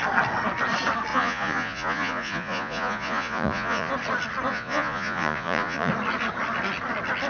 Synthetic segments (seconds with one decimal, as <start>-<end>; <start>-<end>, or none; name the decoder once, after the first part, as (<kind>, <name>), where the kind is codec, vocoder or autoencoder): 1.1-3.9 (vocoder, Vocos); 4.5-5.9